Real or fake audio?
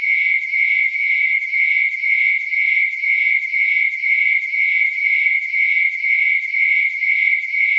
fake